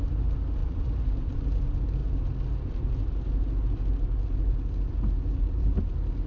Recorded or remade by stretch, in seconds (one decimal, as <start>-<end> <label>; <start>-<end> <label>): 0.0-0.6 recorded; 0.6-1.4 remade; 1.4-6.3 recorded